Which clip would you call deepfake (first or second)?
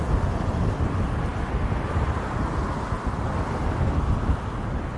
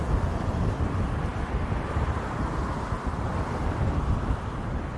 second